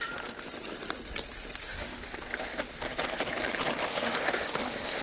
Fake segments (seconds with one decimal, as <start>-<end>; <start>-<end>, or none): 1.6-2.1; 3.9-5.0